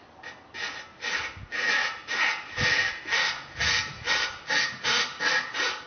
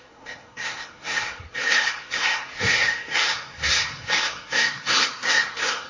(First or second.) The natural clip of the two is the first